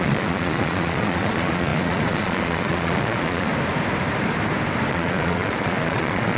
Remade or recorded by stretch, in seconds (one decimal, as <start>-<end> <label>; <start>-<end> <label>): 0.0-3.5 remade; 3.5-4.9 recorded; 4.9-6.4 remade